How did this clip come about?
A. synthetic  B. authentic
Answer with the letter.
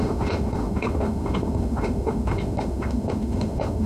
A